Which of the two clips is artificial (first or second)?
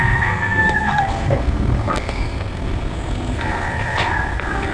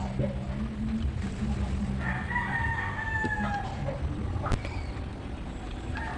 first